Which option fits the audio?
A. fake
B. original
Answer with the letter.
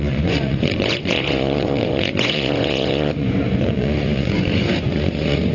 A